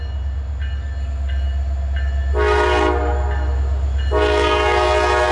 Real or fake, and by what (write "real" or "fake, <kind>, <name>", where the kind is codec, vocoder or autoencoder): real